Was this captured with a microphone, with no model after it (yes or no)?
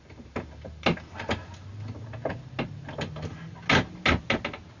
yes